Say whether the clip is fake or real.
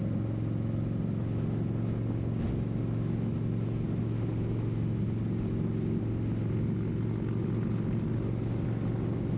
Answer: real